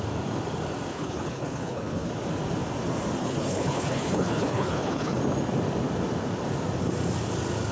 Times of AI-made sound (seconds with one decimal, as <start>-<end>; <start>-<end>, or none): 0.9-2.1; 3.2-5.2